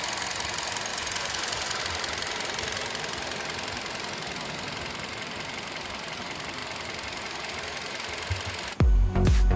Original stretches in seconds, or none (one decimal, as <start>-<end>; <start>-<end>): 0.0-0.9; 1.8-9.6